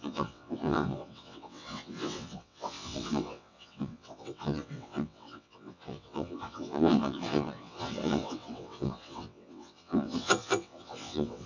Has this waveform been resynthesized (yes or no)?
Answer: yes